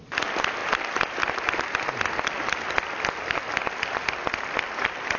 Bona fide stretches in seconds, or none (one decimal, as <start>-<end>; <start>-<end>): 0.0-5.2